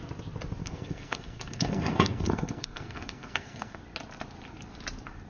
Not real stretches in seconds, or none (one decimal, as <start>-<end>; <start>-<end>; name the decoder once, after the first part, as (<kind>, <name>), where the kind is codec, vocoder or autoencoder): 0.6-3.8 (codec, SNAC)